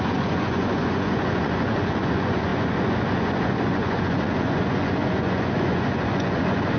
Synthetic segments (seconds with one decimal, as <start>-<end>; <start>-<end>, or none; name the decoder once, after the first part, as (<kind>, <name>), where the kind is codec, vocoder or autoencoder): 0.0-6.8 (vocoder, Vocos)